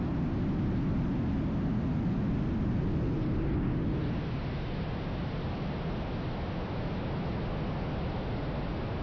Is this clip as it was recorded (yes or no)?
yes